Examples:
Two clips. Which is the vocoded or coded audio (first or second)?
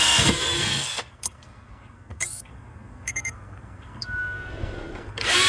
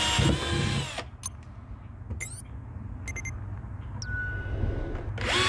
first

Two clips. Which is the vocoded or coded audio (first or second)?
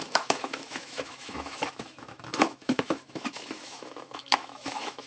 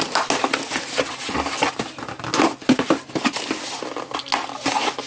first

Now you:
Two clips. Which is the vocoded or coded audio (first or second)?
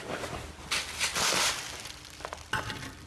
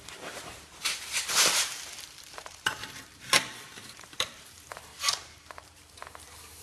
second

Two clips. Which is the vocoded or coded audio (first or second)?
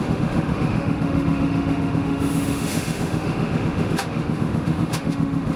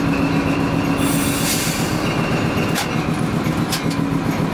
first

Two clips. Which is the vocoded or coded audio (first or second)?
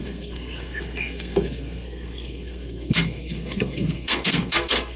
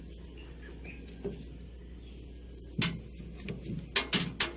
first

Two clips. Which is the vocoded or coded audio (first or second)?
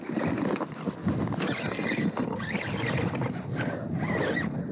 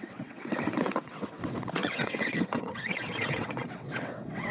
second